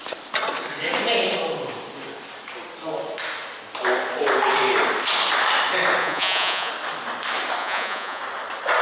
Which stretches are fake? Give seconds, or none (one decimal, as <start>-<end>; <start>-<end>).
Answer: 6.0-6.7; 7.6-8.2